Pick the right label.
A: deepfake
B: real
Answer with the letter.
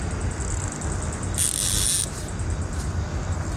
B